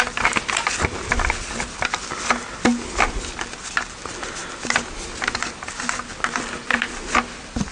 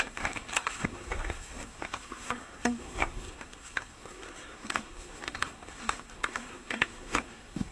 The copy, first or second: second